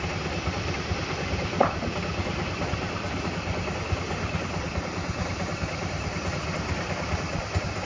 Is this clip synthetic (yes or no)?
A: no